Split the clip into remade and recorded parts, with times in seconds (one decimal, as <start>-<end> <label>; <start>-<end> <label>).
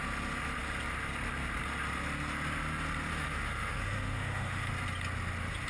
0.0-3.1 recorded; 3.1-4.7 remade; 4.7-5.7 recorded